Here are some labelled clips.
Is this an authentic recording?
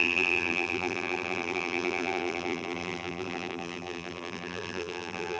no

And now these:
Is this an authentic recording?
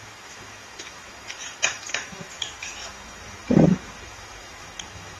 no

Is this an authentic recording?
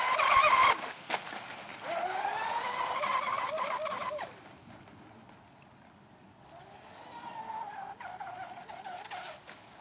yes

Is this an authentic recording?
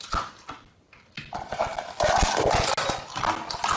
yes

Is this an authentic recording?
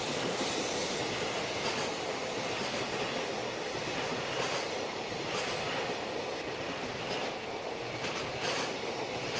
yes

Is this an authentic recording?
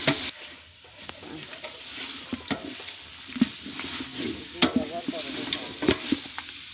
yes